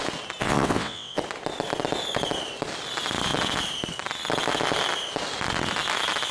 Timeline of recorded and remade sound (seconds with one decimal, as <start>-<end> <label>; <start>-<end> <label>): 0.0-0.4 recorded; 0.4-1.2 remade; 1.2-6.3 recorded